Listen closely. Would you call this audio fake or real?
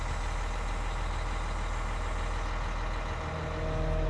real